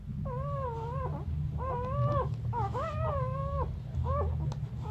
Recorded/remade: recorded